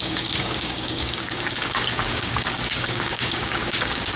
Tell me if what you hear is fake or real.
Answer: fake